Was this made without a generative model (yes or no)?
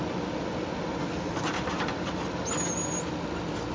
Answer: yes